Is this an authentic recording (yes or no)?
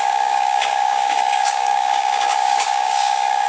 no